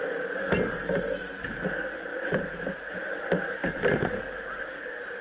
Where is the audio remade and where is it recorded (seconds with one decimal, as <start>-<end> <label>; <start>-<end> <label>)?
0.0-5.2 recorded

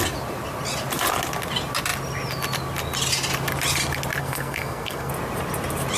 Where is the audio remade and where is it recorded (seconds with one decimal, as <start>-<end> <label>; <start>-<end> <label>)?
0.0-4.2 recorded; 4.2-5.1 remade; 5.1-6.0 recorded